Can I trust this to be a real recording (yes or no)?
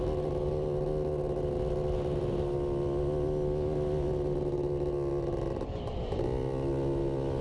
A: yes